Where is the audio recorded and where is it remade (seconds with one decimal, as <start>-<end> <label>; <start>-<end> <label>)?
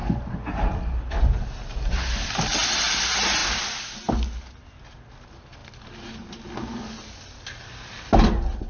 0.0-8.7 recorded